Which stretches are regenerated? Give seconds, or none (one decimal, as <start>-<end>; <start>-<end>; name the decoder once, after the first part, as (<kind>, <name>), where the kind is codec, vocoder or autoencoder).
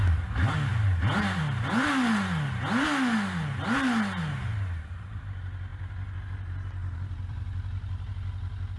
6.8-8.1 (vocoder, BigVGAN v2)